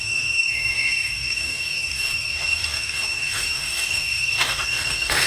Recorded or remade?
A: remade